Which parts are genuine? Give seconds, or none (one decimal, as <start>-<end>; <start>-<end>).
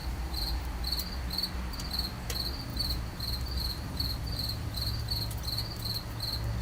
0.8-2.7; 5.0-6.6